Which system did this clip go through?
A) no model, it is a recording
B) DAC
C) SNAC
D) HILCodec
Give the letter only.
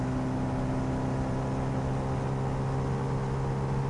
A